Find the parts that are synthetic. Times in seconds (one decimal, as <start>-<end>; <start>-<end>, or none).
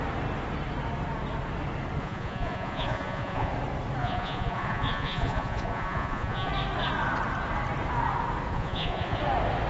2.0-3.5; 4.0-6.5; 8.5-9.2